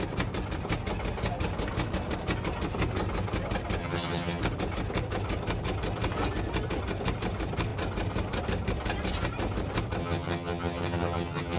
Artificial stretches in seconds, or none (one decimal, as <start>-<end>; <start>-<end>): 3.8-4.4; 10.0-11.6